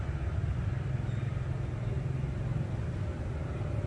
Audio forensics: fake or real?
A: real